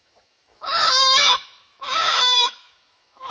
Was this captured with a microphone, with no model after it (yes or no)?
no